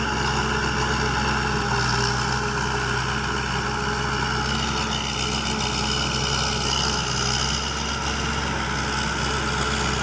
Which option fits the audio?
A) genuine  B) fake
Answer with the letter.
A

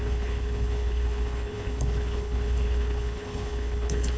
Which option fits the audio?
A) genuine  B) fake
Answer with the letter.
B